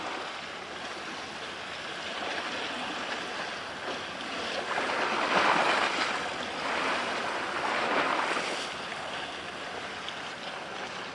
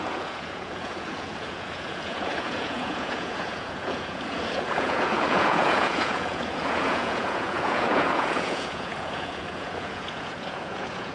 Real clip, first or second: first